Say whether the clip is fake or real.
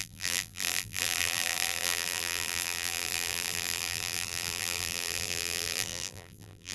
fake